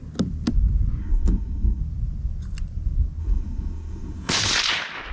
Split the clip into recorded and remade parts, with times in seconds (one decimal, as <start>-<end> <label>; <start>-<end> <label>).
0.0-1.0 recorded; 1.0-1.8 remade; 1.8-3.2 recorded; 3.2-4.3 remade; 4.3-5.1 recorded